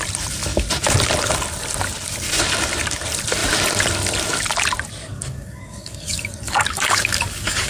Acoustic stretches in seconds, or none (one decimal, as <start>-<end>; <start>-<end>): 0.0-5.0